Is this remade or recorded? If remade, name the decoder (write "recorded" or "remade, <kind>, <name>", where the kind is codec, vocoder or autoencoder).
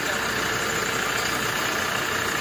recorded